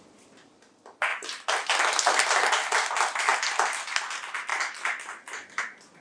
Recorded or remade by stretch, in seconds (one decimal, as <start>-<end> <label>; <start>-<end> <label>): 0.0-6.0 recorded